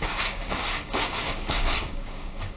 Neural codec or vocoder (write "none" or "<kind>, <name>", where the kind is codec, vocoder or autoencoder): codec, DAC